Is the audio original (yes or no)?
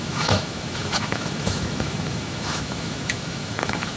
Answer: no